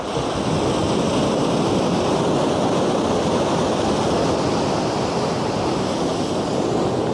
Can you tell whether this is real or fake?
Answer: real